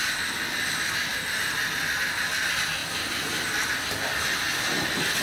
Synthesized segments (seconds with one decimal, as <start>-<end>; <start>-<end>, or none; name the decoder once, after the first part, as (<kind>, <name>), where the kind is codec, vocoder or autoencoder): none